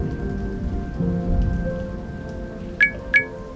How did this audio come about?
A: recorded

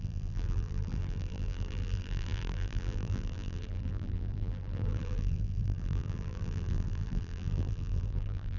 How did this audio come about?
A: remade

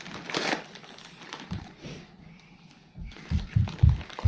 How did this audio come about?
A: remade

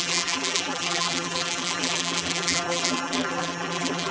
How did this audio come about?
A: remade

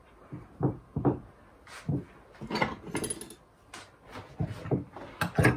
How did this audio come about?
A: recorded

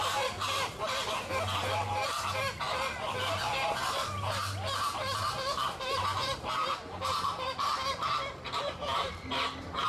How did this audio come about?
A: remade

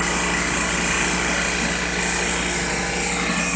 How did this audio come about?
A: recorded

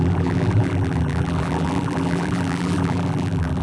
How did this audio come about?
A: remade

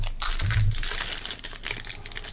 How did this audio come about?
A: recorded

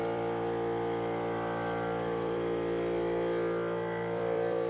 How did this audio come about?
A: remade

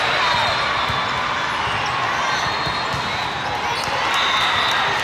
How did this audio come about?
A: recorded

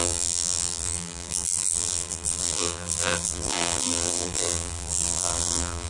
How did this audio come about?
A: remade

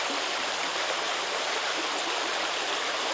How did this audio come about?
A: recorded